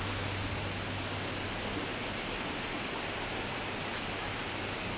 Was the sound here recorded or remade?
recorded